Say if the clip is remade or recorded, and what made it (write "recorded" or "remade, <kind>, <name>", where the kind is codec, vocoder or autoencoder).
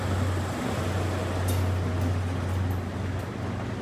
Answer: recorded